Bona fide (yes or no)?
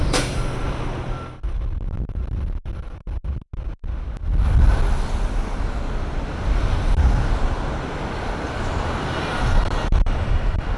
yes